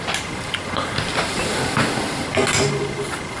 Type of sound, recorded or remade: recorded